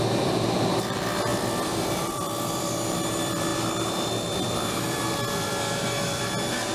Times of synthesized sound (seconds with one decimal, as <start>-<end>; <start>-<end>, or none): 0.0-3.5; 4.3-6.7